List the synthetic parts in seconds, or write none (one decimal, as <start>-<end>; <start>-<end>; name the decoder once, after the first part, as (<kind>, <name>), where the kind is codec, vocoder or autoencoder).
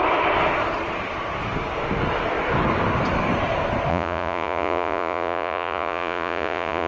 3.9-6.9 (vocoder, Vocos)